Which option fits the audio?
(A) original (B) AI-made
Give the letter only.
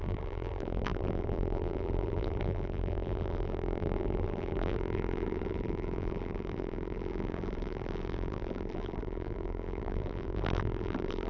B